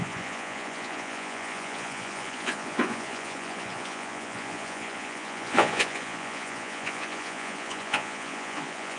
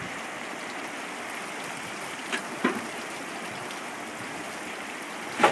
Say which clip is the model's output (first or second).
first